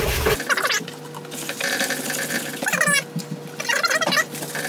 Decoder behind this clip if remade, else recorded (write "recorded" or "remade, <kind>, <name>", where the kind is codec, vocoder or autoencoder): recorded